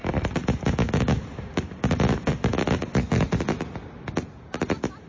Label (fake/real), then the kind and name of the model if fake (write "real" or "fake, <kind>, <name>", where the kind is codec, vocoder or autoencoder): real